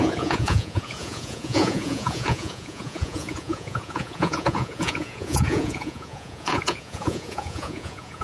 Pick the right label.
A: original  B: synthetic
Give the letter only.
B